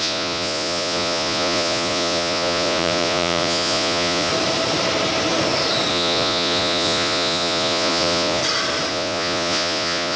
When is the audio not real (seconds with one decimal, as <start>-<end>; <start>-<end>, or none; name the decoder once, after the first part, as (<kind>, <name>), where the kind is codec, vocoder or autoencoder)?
0.0-4.3 (vocoder, Vocos); 5.9-8.4; 8.9-10.2